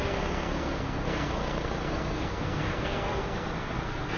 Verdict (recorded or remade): remade